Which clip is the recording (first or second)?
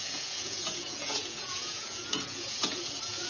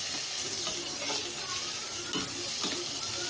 second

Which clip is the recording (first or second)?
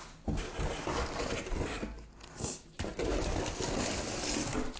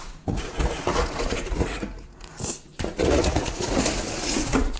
first